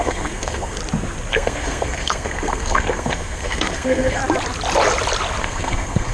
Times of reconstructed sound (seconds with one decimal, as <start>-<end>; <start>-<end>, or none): 0.0-0.8; 1.3-4.2; 5.4-6.1